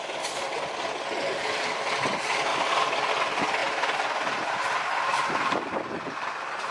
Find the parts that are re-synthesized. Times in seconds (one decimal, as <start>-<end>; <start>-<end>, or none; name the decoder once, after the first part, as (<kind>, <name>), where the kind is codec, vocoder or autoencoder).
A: 2.5-3.1 (vocoder, BigVGAN v2)